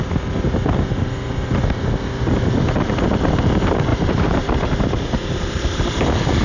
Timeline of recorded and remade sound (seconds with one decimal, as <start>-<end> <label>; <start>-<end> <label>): 0.0-3.9 recorded; 3.9-6.0 remade; 6.0-6.4 recorded